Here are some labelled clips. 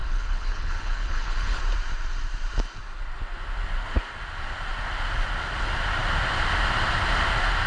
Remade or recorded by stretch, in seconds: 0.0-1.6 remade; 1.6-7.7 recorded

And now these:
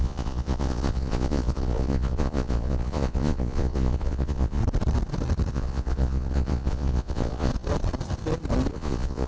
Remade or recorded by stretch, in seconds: 0.0-4.6 remade; 4.6-5.5 recorded; 5.5-7.5 remade; 7.5-8.7 recorded; 8.7-9.3 remade

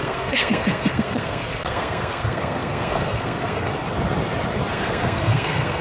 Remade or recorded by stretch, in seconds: 0.0-3.7 remade; 3.7-4.7 recorded; 4.7-5.8 remade